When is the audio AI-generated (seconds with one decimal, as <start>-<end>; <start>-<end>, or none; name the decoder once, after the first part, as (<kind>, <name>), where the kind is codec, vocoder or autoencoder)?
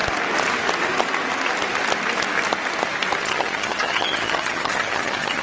3.2-5.4 (vocoder, HiFi-GAN)